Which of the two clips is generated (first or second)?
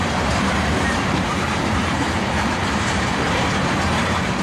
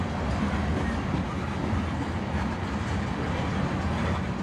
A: first